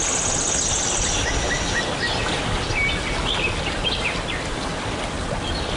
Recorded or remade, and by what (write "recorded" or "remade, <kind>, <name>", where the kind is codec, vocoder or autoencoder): recorded